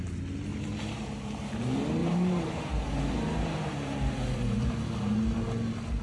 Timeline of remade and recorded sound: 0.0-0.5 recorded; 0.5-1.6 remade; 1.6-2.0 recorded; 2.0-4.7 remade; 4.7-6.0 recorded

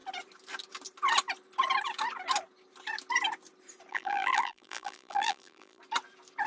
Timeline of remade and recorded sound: 0.0-3.9 recorded; 3.9-5.8 remade; 5.8-6.5 recorded

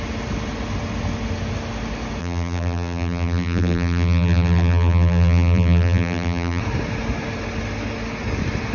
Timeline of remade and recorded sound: 0.0-2.2 recorded; 2.2-6.6 remade; 6.6-8.7 recorded

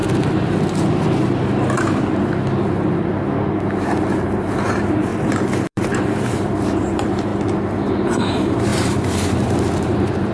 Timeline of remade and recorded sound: 0.0-3.8 recorded; 3.8-5.1 remade; 5.1-5.6 recorded; 5.6-7.3 remade; 7.3-7.9 recorded; 7.9-10.3 remade

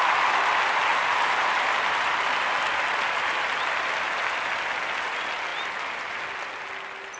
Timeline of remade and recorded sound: 0.0-0.9 recorded; 0.9-2.1 remade; 2.1-5.5 recorded; 5.5-6.2 remade; 6.2-7.2 recorded

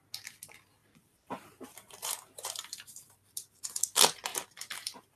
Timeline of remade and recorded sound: 0.0-0.8 recorded; 0.8-3.6 remade; 3.6-4.3 recorded; 4.3-5.2 remade

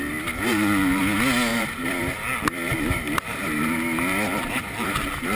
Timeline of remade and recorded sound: 0.0-0.4 recorded; 0.4-1.0 remade; 1.0-1.5 recorded; 1.5-4.7 remade; 4.7-5.3 recorded

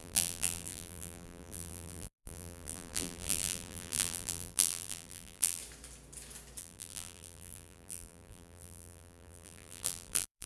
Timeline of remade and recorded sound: 0.0-5.6 remade; 5.6-6.6 recorded; 6.6-10.5 remade